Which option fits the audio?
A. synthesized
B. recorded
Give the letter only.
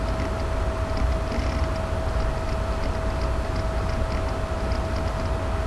B